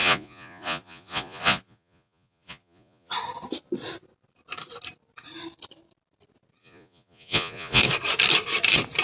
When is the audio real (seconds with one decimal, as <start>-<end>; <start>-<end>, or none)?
3.1-6.6; 7.8-9.0